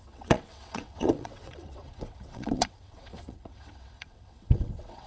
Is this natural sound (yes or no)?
no